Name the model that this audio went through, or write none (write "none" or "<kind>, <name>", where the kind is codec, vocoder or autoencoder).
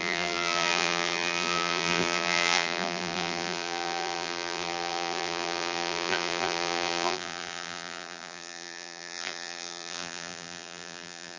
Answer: vocoder, BigVGAN v2